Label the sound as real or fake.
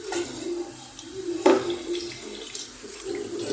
real